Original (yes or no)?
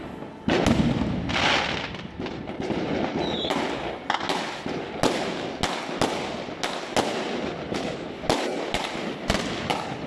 yes